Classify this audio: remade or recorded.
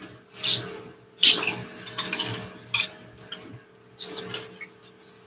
recorded